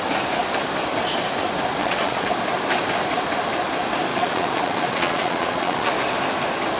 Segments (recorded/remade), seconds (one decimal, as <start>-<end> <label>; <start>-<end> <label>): 0.0-1.8 recorded; 1.8-2.3 remade; 2.3-4.1 recorded; 4.1-5.9 remade; 5.9-6.8 recorded